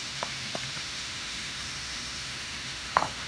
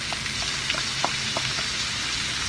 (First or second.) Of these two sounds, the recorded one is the second